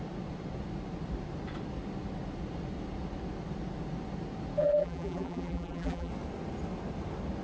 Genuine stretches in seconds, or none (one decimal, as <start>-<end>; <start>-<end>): 0.0-4.6; 6.1-7.4